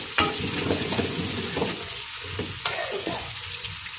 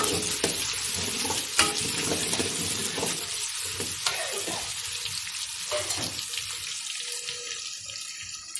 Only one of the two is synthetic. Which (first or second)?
first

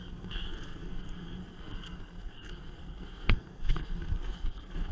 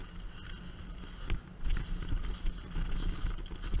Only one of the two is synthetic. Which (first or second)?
first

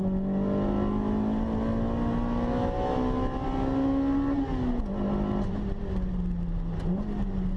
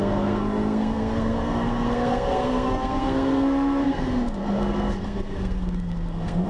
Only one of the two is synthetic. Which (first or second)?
second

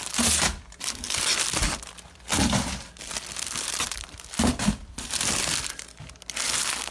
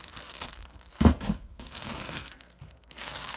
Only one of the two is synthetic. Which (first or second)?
second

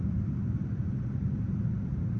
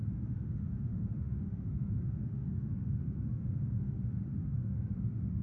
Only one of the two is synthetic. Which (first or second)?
second